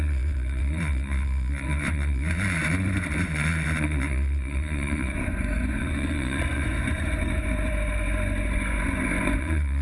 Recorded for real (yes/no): no